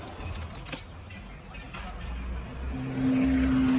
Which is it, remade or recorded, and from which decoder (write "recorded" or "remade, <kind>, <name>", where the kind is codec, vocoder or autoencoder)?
recorded